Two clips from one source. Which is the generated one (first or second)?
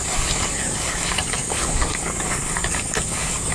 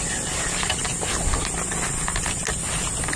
first